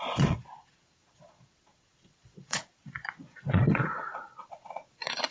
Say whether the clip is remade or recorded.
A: remade